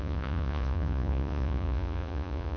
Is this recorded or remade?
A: remade